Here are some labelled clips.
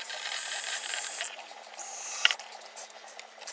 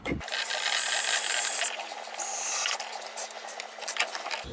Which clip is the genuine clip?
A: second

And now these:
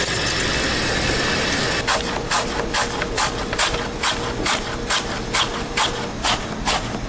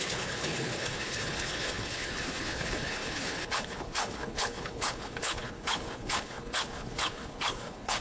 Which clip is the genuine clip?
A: first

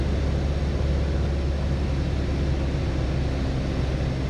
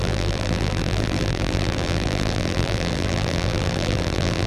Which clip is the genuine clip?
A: first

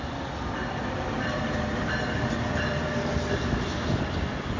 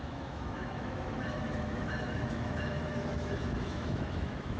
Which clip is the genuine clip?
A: first